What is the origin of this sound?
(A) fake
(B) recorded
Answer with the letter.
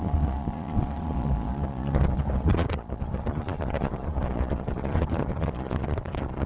A